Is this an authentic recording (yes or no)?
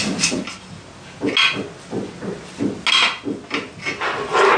yes